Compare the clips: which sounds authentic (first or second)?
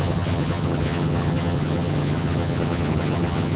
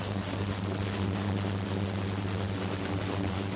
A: second